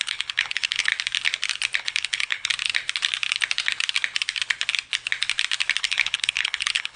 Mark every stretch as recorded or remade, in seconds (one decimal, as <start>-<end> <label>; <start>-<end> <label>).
0.0-0.9 remade; 0.9-1.8 recorded; 1.8-2.5 remade; 2.5-5.8 recorded; 5.8-7.0 remade